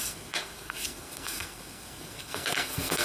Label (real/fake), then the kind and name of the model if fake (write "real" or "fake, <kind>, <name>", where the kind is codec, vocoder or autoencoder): fake, codec, SNAC